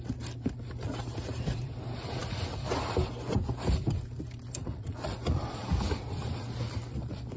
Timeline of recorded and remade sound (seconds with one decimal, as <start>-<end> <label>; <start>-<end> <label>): 0.0-4.6 recorded; 4.6-5.2 remade; 5.2-7.4 recorded

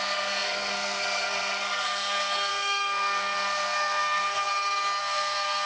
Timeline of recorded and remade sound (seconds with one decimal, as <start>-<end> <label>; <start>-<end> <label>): 0.0-4.5 remade; 4.5-5.0 recorded; 5.0-5.7 remade

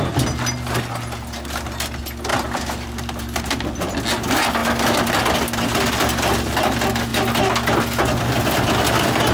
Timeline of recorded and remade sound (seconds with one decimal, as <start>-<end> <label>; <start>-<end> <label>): 0.0-2.3 recorded; 2.3-3.5 remade; 3.5-9.3 recorded

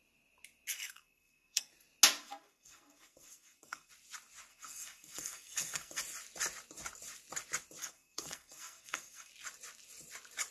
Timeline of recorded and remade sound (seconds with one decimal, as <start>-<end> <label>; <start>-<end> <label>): 0.0-0.7 recorded; 0.7-1.7 remade; 1.7-2.2 recorded; 2.2-3.9 remade; 3.9-4.5 recorded; 4.5-6.0 remade; 6.0-7.8 recorded; 7.8-9.3 remade; 9.3-10.5 recorded